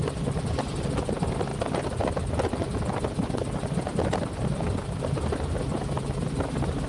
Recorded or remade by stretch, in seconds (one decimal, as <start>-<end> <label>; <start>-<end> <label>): 0.0-6.9 recorded